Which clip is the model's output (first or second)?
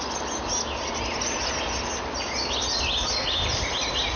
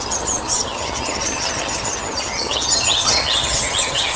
second